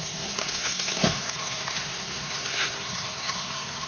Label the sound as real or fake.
fake